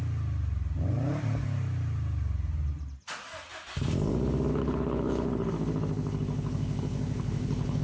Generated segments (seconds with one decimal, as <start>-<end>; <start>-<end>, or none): 4.5-7.8